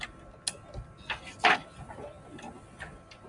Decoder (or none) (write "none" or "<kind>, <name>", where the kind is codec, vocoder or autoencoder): none